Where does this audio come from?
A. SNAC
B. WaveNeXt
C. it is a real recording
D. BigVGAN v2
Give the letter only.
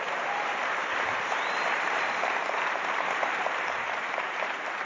D